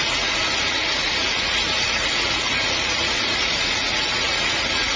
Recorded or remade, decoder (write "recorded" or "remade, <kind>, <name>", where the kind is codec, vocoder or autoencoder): remade, vocoder, Vocos